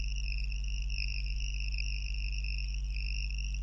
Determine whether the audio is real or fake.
real